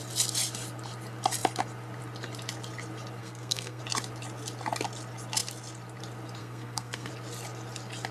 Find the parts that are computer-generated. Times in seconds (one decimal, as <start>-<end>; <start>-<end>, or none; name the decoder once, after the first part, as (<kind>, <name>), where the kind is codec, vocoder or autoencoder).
3.2-3.8 (codec, SNAC); 6.4-7.1